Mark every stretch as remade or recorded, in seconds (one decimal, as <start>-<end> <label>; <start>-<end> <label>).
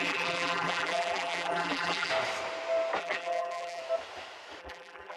0.0-2.1 remade; 2.1-3.0 recorded; 3.0-3.8 remade; 3.8-4.6 recorded; 4.6-5.2 remade